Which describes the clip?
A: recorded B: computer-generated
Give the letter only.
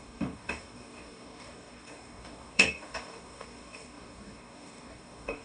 B